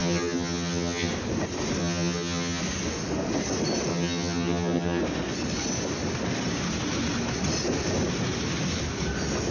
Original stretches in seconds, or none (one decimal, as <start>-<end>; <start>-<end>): 1.1-1.8; 2.6-3.9; 5.0-9.5